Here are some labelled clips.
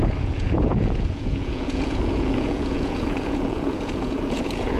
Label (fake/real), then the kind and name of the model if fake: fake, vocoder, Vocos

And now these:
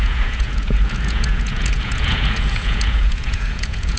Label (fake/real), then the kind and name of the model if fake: fake, vocoder, Vocos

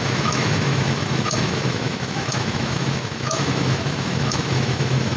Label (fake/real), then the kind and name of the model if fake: fake, autoencoder, DAC-VAE